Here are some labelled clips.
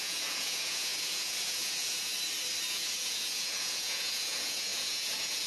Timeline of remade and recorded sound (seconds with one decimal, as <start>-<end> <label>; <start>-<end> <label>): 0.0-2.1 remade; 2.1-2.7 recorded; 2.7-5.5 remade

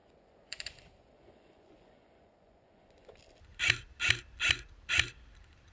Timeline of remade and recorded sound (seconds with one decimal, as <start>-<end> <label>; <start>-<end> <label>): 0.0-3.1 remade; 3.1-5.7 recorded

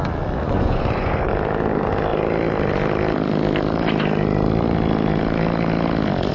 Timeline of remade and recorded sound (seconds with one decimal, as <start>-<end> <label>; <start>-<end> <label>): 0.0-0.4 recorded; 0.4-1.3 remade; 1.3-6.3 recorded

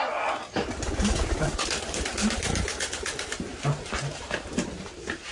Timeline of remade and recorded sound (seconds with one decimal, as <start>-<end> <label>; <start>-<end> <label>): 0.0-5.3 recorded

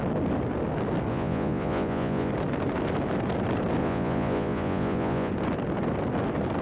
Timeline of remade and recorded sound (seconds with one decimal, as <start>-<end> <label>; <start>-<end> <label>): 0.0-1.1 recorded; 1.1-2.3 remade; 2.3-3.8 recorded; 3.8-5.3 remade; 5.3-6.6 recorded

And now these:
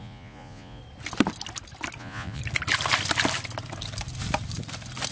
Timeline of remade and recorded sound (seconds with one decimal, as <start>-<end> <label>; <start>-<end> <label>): 0.0-0.8 remade; 0.8-2.0 recorded; 2.0-2.4 remade; 2.4-5.1 recorded

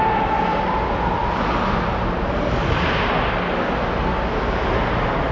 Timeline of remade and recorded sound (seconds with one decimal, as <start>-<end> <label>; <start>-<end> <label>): 0.0-5.3 recorded